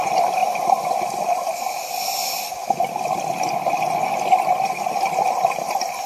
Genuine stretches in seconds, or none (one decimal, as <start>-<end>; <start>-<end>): 0.0-6.1